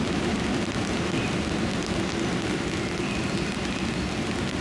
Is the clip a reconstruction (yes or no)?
no